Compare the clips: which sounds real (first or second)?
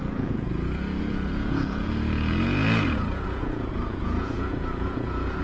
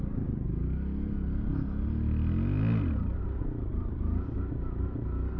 second